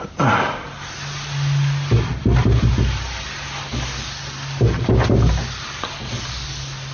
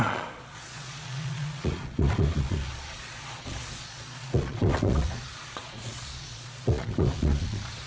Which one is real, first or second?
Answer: first